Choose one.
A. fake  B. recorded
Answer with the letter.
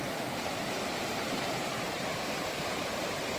A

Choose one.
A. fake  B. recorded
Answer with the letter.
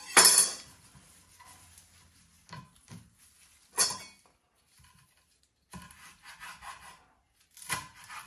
B